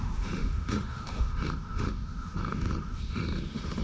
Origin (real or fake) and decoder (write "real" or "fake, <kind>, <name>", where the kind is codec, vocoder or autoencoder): fake, autoencoder, DAC-VAE